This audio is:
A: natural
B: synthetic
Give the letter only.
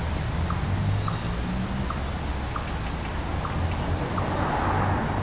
A